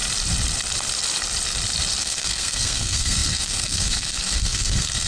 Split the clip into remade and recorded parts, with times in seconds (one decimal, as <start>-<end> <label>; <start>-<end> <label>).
0.0-2.0 recorded; 2.0-5.1 remade